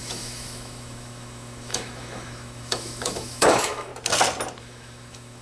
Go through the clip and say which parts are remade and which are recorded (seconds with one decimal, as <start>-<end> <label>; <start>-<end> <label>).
0.0-3.9 remade; 3.9-4.6 recorded; 4.6-5.4 remade